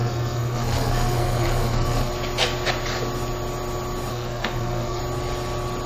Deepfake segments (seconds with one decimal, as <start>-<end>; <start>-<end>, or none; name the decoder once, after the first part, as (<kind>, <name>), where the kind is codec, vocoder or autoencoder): 0.0-2.1 (codec, SNAC); 4.1-5.0